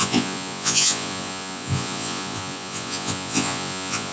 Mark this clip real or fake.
fake